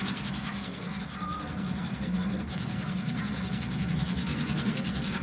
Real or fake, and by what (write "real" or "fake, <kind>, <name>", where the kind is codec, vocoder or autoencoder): fake, codec, SNAC